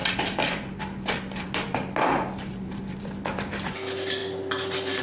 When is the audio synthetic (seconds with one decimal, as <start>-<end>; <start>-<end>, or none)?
none